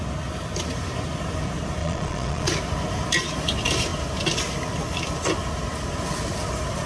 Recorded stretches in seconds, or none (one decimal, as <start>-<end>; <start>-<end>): 0.0-1.8; 2.5-6.9